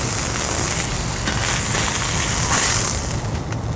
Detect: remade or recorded recorded